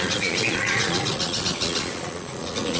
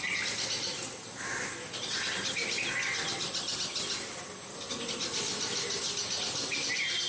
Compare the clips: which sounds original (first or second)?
second